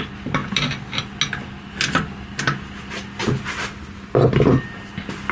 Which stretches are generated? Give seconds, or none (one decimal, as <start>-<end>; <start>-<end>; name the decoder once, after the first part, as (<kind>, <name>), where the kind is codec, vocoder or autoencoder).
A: none